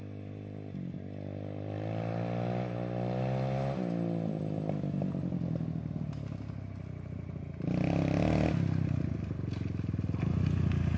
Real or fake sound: real